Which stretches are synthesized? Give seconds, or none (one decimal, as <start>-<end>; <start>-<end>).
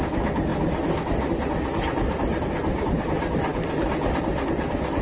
none